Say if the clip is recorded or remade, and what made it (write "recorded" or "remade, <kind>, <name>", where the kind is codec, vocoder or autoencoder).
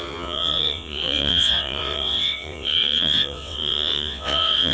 remade, vocoder, WaveNeXt